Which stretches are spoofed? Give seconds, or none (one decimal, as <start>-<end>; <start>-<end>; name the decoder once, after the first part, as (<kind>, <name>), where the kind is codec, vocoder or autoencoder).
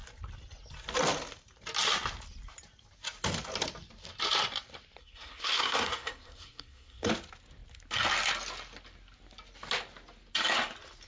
5.0-7.1 (codec, SNAC)